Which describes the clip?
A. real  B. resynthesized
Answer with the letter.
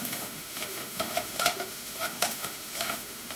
B